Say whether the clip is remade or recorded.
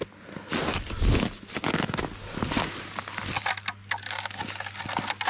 recorded